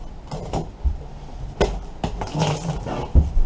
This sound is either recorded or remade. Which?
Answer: recorded